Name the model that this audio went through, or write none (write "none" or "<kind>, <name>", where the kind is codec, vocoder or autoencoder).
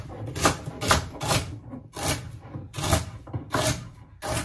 none